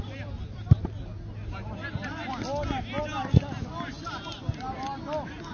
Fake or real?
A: real